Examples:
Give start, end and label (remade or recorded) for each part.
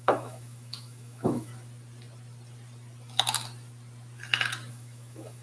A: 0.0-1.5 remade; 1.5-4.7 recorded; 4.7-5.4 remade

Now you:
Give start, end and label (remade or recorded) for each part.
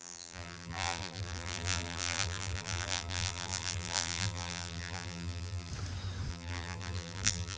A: 0.0-5.7 remade; 5.7-6.3 recorded; 6.3-7.6 remade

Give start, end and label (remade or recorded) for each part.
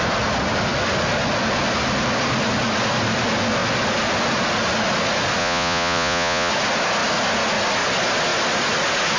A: 0.0-5.4 recorded; 5.4-6.5 remade; 6.5-9.2 recorded